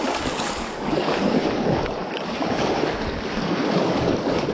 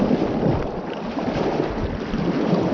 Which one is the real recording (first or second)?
second